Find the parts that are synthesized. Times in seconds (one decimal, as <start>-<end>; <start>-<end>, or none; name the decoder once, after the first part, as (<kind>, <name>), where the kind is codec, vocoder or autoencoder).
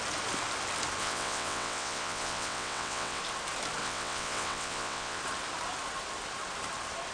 1.0-3.2 (vocoder, WaveNeXt); 3.8-5.2